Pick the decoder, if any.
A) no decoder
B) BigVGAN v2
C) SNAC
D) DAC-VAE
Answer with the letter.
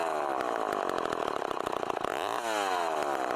A